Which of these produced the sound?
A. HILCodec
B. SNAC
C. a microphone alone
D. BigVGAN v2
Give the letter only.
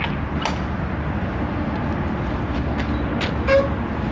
C